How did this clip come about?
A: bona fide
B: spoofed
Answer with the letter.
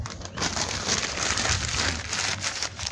A